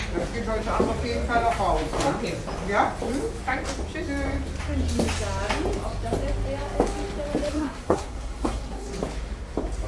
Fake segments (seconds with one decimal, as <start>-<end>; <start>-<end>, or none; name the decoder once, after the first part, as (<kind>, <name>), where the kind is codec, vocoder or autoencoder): 7.5-8.9 (codec, SNAC)

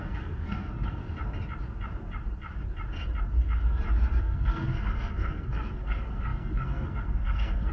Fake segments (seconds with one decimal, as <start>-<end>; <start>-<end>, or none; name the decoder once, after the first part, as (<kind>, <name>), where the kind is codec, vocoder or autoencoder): 0.0-1.0 (codec, SNAC); 4.2-7.7

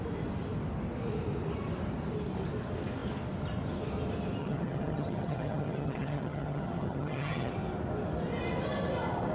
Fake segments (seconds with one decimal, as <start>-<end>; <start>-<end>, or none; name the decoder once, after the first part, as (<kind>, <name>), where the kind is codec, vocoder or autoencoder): 4.4-7.5 (vocoder, HiFi-GAN)

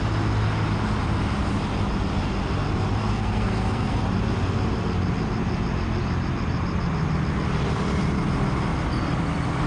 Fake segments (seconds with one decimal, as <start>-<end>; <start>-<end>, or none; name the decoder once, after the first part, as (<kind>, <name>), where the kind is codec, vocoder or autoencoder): 3.0-4.0 (codec, SNAC)

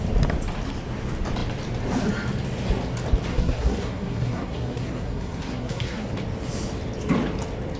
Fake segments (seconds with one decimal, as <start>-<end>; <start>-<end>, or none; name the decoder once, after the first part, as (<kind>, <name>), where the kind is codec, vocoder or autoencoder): 3.3-6.1 (codec, SNAC)

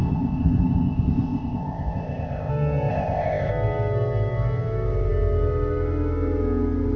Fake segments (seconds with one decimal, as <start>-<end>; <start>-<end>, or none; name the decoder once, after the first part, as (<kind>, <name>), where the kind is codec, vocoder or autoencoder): 0.0-2.5 (codec, ZipCodec); 2.9-3.5